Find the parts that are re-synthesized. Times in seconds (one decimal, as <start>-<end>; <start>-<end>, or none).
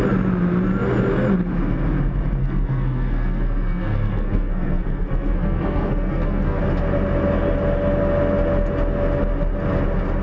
2.4-6.6